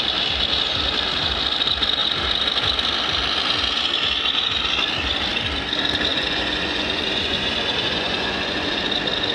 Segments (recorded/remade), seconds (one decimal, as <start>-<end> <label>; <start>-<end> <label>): 0.0-6.1 recorded; 6.1-8.8 remade; 8.8-9.3 recorded